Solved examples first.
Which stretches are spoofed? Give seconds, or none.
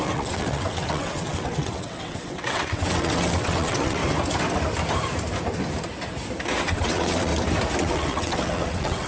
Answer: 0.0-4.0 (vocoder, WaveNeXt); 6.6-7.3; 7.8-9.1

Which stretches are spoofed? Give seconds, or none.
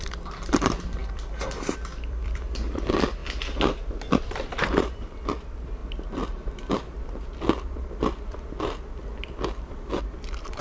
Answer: 0.0-3.2 (vocoder, BigVGAN v2); 4.1-5.8; 10.0-10.6